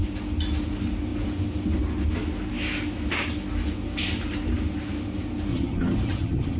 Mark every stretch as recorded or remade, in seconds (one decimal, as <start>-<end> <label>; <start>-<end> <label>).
0.0-5.5 recorded; 5.5-6.6 remade